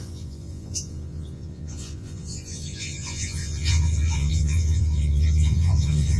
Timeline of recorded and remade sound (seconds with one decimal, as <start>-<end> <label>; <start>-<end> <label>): 0.0-6.2 remade